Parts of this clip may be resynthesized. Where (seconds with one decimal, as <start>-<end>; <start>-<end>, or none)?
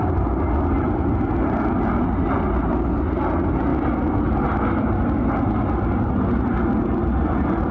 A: 3.7-4.2